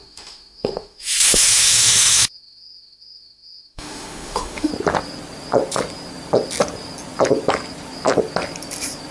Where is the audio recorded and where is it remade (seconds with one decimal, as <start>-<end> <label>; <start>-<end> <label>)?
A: 0.0-4.7 remade; 4.7-9.1 recorded